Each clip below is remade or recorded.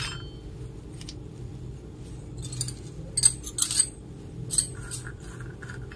recorded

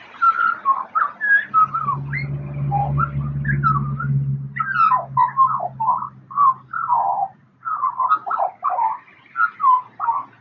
recorded